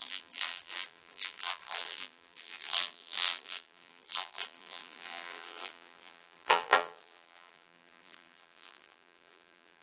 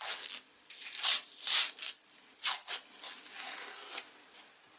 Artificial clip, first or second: first